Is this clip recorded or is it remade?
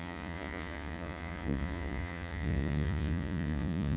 remade